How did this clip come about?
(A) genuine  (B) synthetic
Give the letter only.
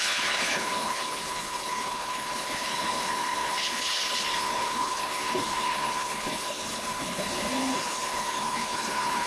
B